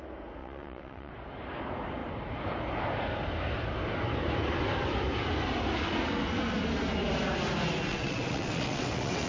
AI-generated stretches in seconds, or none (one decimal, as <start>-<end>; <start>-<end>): 0.4-1.1; 7.9-9.3